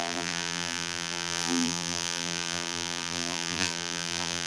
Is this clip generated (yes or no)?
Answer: yes